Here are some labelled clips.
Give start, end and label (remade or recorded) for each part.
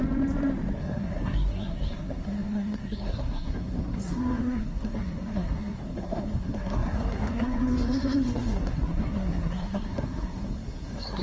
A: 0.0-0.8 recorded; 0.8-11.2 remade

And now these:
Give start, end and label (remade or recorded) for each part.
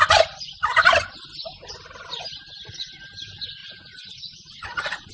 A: 0.0-3.6 recorded; 3.6-5.1 remade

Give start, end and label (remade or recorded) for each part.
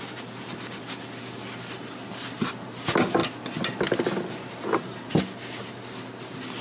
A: 0.0-6.6 recorded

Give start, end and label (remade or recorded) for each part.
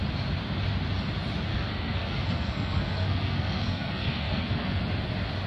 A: 0.0-1.5 recorded; 1.5-4.8 remade; 4.8-5.5 recorded